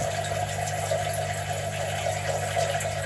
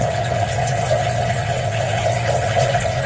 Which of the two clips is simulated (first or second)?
second